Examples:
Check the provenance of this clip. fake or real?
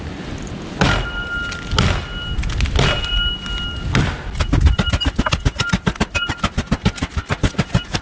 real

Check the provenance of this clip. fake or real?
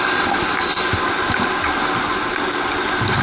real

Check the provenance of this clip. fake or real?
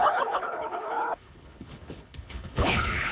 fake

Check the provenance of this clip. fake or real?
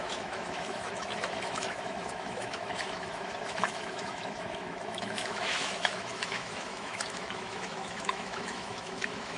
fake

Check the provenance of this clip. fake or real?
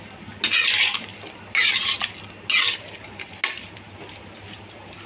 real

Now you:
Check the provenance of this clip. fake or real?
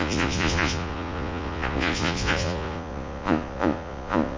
fake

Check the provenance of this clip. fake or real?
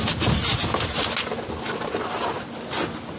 real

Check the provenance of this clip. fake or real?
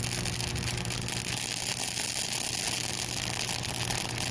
real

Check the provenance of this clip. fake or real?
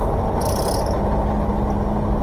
real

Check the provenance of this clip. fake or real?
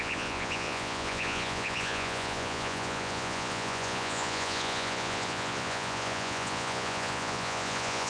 fake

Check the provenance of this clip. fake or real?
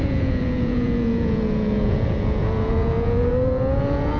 fake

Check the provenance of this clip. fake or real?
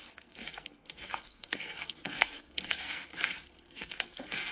fake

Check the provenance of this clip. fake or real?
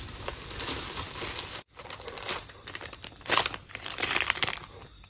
fake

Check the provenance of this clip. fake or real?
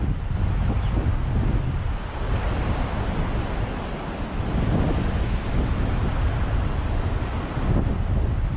real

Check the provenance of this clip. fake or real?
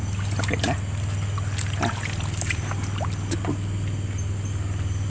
real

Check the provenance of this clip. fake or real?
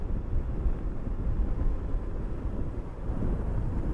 real